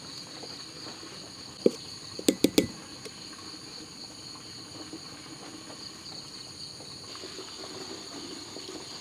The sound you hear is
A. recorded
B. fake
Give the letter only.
A